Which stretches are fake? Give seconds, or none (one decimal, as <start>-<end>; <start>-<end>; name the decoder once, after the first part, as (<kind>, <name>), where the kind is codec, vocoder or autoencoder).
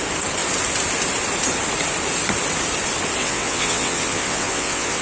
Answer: 3.2-5.0 (vocoder, WaveNeXt)